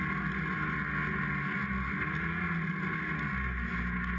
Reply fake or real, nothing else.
real